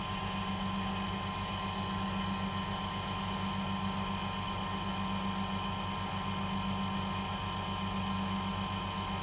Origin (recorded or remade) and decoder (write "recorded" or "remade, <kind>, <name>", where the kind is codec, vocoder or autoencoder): recorded